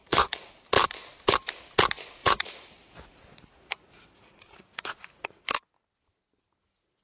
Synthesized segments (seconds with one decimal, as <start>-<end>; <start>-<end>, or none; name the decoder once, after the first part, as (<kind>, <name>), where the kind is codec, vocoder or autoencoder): 0.0-0.5 (vocoder, Vocos); 2.2-5.4